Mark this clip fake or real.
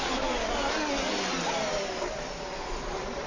real